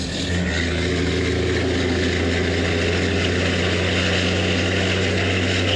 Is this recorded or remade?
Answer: recorded